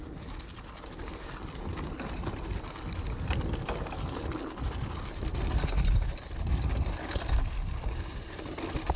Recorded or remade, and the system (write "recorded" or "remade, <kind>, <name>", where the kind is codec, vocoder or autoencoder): recorded